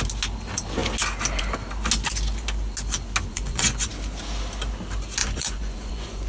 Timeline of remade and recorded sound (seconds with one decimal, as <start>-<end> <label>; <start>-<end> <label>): 0.0-3.3 recorded; 3.3-3.9 remade; 3.9-5.2 recorded; 5.2-6.3 remade